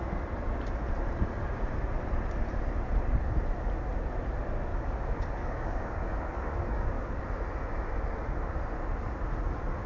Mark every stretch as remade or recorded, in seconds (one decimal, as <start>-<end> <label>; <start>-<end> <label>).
0.0-4.7 recorded; 4.7-7.2 remade; 7.2-9.9 recorded